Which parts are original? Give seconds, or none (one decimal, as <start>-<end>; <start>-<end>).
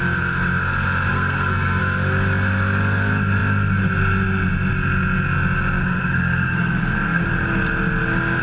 0.0-1.1; 1.8-5.8; 7.3-8.4